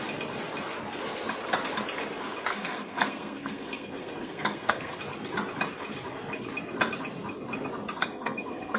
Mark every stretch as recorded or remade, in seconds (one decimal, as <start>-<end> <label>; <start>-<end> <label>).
0.0-2.5 recorded; 2.5-5.0 remade; 5.0-8.0 recorded; 8.0-8.8 remade